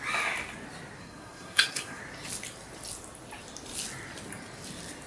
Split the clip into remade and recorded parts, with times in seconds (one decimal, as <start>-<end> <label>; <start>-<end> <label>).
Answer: 0.0-1.0 recorded; 1.0-2.0 remade; 2.0-5.1 recorded